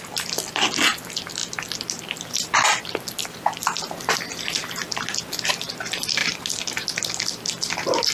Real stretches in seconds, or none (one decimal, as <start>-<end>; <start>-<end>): 0.0-3.2; 4.2-8.1